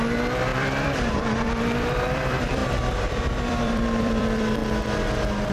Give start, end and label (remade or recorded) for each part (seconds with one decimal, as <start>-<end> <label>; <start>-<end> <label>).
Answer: 0.0-4.6 remade; 4.6-5.5 recorded

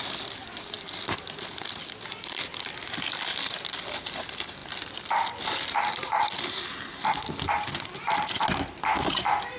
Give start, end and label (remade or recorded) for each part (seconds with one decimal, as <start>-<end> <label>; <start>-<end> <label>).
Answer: 0.0-0.4 recorded; 0.4-1.5 remade; 1.5-4.6 recorded; 4.6-8.4 remade; 8.4-9.6 recorded

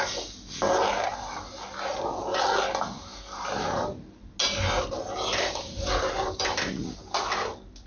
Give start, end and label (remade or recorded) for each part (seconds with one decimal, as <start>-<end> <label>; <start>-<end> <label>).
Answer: 0.0-3.1 recorded; 3.1-4.2 remade; 4.2-5.3 recorded; 5.3-7.3 remade; 7.3-7.9 recorded

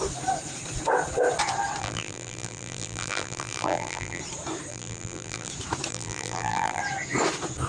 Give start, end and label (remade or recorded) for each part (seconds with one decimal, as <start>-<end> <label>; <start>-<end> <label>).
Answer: 0.0-1.8 recorded; 1.8-4.2 remade; 4.2-4.7 recorded; 4.7-5.5 remade; 5.5-5.9 recorded; 5.9-6.8 remade; 6.8-7.7 recorded

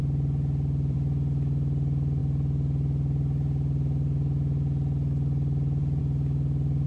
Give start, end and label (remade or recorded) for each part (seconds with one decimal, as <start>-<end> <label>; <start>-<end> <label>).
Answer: 0.0-6.9 recorded

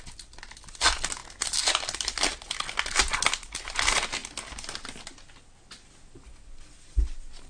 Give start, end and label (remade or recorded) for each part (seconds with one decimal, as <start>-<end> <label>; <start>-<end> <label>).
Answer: 0.0-1.2 recorded; 1.2-2.2 remade; 2.2-7.5 recorded

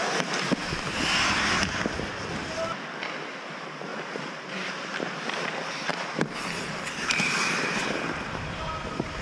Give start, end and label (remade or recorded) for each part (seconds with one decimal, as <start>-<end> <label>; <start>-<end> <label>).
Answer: 0.0-0.6 remade; 0.6-3.4 recorded; 3.4-5.9 remade; 5.9-7.0 recorded; 7.0-9.2 remade